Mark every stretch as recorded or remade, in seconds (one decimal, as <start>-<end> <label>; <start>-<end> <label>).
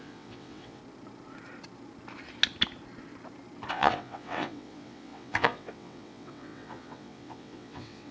0.0-0.8 remade; 0.8-3.7 recorded; 3.7-8.1 remade